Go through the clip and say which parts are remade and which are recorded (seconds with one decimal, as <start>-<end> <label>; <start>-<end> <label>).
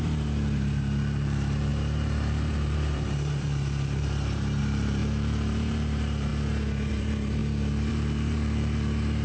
0.0-6.3 remade; 6.3-6.9 recorded; 6.9-9.2 remade